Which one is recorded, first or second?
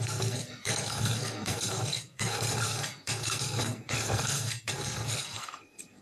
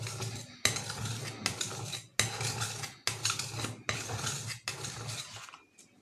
second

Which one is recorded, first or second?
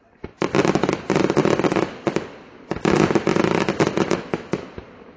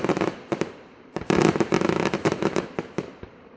first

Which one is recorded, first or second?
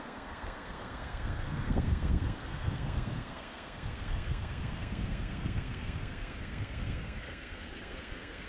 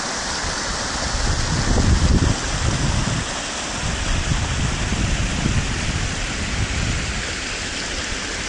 second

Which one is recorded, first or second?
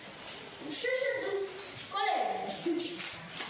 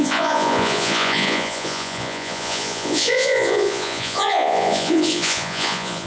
first